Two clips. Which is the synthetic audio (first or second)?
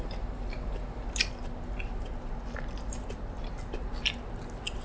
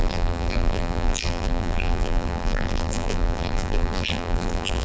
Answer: second